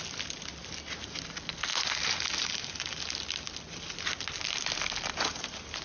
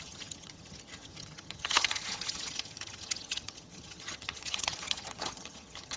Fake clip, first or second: second